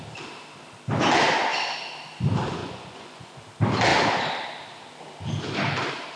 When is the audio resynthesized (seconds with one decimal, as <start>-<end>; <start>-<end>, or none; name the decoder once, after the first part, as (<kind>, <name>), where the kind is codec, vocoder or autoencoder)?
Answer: 2.6-3.4 (vocoder, Vocos)

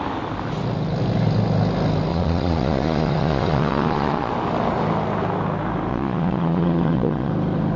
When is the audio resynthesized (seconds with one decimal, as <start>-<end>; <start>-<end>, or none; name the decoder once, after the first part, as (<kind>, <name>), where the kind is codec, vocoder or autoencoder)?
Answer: 2.1-4.3 (vocoder, Vocos); 5.9-7.3

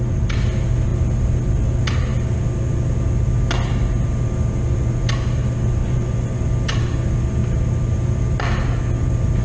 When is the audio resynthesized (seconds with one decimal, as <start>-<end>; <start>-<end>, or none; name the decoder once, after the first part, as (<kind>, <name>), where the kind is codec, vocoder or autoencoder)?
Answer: 5.8-6.4 (vocoder, Vocos)

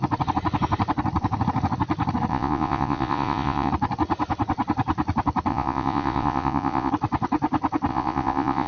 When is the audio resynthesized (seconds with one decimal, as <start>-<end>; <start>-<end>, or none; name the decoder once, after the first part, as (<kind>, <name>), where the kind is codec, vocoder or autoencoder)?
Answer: 2.3-3.7 (vocoder, Vocos); 5.5-6.9; 7.9-8.7

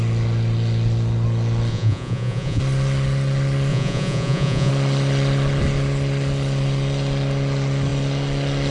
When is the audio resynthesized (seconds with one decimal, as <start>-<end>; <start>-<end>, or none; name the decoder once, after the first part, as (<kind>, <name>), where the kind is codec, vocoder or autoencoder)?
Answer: 1.7-2.6 (vocoder, Vocos); 3.7-4.7

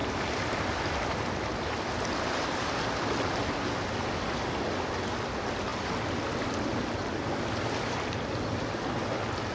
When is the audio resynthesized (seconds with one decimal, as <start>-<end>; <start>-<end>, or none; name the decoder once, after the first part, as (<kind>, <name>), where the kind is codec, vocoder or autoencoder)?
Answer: none

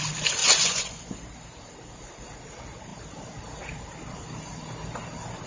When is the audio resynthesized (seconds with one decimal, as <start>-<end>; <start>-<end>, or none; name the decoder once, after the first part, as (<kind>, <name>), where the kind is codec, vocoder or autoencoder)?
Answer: 0.4-1.0 (vocoder, Vocos)